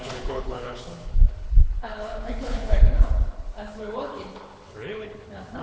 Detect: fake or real fake